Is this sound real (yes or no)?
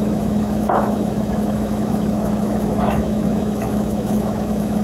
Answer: no